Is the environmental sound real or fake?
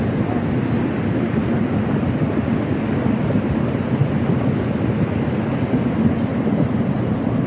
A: real